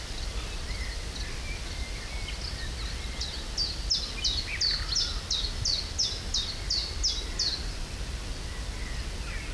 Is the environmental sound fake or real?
real